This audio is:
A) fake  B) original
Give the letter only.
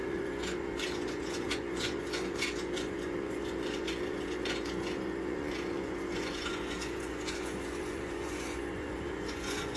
A